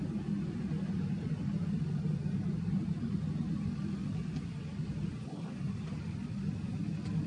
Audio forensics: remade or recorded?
recorded